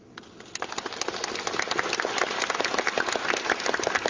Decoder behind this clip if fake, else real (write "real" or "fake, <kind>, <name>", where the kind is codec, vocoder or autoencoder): real